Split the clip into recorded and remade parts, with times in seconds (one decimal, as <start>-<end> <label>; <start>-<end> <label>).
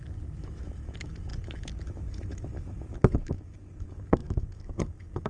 0.0-5.3 remade